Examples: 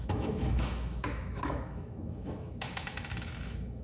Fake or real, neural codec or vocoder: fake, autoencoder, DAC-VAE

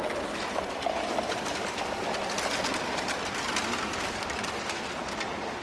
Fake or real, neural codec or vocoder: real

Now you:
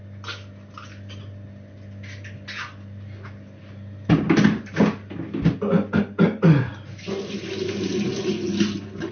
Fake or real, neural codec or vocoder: real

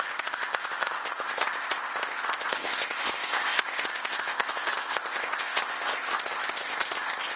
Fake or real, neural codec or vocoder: fake, codec, ZipCodec